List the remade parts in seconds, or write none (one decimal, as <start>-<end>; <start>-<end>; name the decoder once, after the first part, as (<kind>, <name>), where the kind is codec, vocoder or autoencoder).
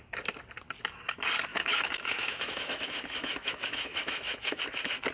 1.5-4.6 (autoencoder, DAC-VAE)